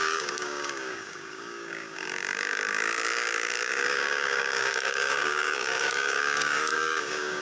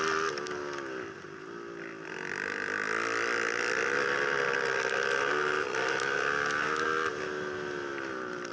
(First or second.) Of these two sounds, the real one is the second